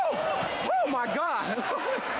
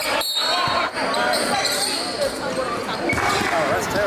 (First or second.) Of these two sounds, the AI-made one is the first